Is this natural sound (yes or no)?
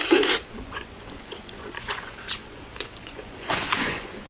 no